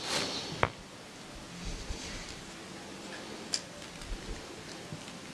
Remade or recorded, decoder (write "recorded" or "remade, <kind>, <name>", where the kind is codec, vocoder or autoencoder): recorded